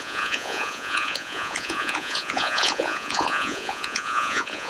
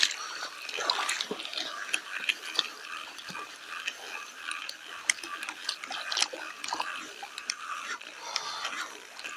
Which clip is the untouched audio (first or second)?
second